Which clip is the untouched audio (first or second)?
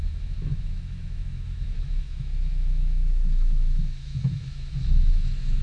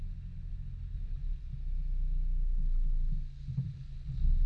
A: second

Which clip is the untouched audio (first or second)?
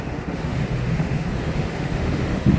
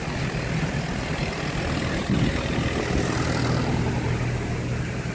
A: second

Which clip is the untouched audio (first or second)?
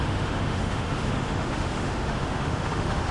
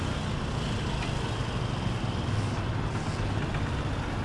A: second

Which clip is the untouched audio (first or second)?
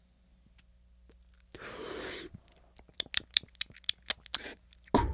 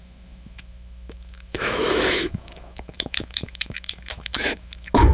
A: first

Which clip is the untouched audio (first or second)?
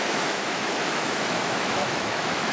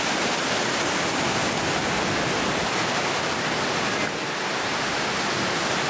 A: second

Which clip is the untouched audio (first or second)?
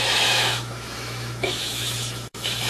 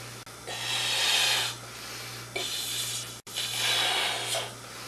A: second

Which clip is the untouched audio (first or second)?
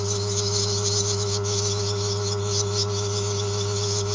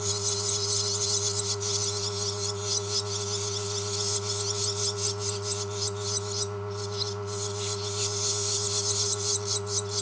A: second